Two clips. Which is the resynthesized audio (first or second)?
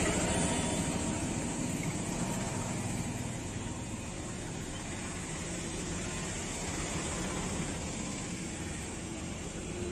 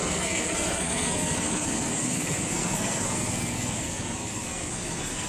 second